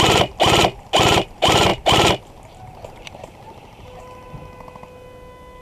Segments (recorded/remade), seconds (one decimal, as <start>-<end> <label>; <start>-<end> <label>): 0.0-5.6 recorded